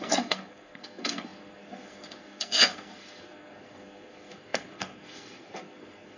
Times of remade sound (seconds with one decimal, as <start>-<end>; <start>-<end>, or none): 0.0-6.2